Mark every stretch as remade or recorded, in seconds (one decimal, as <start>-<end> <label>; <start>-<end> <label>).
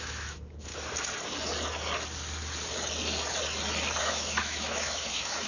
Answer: 0.0-0.7 remade; 0.7-4.0 recorded; 4.0-5.5 remade